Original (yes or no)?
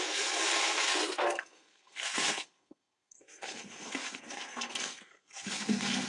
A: no